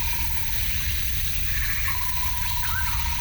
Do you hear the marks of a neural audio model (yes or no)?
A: no